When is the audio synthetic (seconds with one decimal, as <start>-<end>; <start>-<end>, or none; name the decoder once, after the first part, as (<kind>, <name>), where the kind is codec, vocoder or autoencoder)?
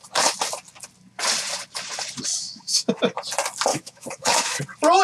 2.3-3.0 (autoencoder, DAC-VAE); 3.7-4.6